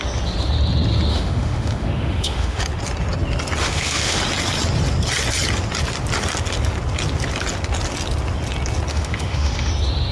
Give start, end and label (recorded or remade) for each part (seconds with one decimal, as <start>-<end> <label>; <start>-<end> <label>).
0.0-1.1 recorded; 1.1-2.6 remade; 2.6-3.6 recorded; 3.6-4.2 remade; 4.2-8.9 recorded; 8.9-9.7 remade; 9.7-10.1 recorded